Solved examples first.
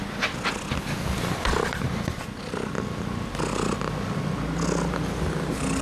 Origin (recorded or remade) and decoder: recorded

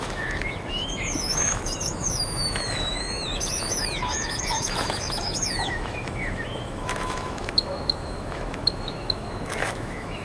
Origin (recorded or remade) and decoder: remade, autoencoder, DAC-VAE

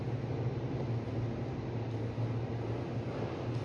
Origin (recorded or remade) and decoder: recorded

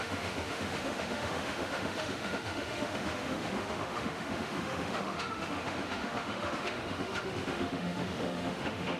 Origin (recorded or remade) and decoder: remade, autoencoder, DAC-VAE